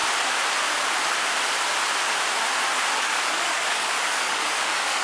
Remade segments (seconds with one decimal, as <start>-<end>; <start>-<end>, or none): 3.0-5.0

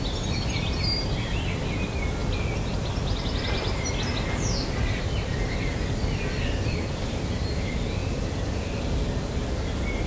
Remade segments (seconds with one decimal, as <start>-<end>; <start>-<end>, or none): none

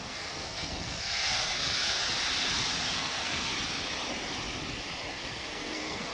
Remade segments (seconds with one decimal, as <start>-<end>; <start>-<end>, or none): 0.0-2.0; 2.9-3.5; 5.1-6.1

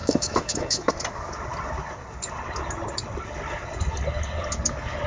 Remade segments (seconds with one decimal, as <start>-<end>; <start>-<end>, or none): 0.0-0.9

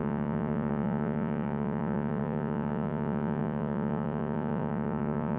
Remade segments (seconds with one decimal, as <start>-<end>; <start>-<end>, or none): 0.0-5.4

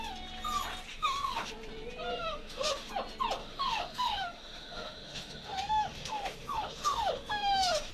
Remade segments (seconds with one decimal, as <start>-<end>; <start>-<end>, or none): 0.9-1.5; 2.1-2.9; 3.4-7.9

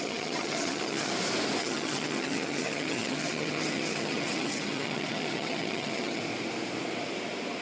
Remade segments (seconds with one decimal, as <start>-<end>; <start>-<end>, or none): 0.0-1.1; 1.6-6.2

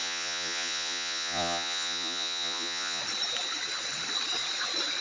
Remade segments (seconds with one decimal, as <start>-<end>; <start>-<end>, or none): 0.0-3.0